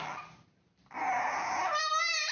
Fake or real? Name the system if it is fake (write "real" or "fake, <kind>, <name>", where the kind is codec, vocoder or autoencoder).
real